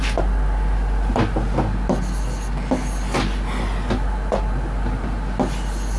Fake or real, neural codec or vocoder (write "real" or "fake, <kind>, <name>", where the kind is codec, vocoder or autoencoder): real